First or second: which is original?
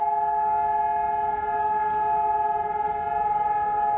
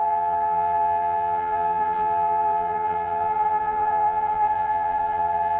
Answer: first